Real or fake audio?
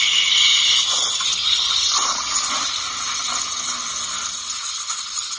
real